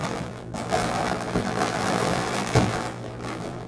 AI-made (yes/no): yes